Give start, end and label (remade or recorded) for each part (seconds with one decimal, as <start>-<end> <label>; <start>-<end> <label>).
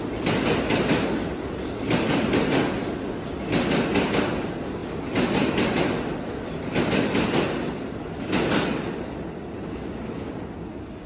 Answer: 0.0-11.1 recorded